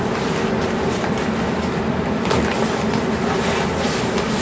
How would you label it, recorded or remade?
recorded